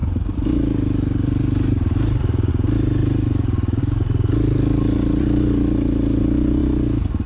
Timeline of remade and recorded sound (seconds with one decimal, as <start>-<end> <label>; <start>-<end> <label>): 0.0-7.3 recorded